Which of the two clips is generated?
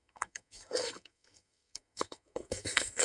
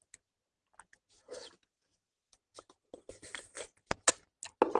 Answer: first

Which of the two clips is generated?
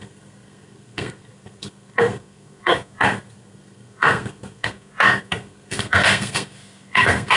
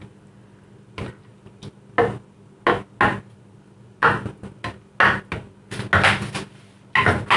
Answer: first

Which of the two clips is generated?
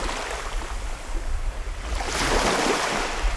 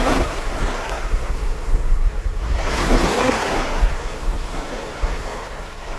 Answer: second